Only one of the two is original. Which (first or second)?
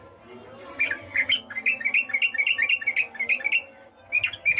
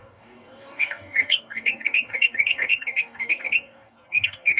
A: first